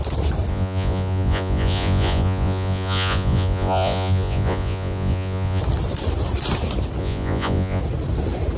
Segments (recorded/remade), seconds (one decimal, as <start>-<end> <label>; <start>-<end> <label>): 0.0-0.5 recorded; 0.5-5.6 remade; 5.6-7.0 recorded; 7.0-7.8 remade; 7.8-8.6 recorded